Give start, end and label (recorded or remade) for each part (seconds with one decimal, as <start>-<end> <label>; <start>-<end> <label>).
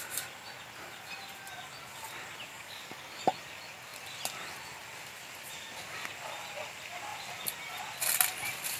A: 0.0-2.5 recorded; 2.5-3.2 remade; 3.2-8.8 recorded